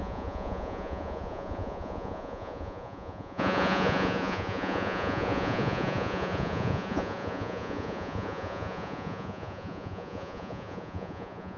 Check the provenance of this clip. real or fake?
fake